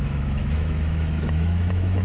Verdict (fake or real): fake